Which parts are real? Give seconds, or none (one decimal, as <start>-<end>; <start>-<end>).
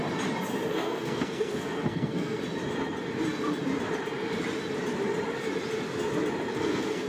0.0-0.7; 2.4-6.5